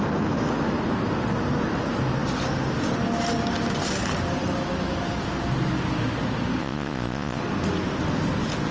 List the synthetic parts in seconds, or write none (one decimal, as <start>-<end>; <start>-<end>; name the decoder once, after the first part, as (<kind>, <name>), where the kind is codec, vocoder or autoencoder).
6.6-7.4 (vocoder, Vocos)